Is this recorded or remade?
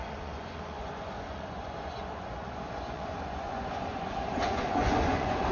remade